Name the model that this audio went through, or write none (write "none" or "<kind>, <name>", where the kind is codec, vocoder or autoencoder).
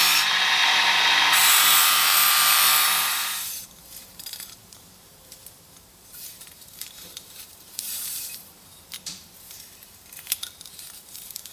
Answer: vocoder, BigVGAN v2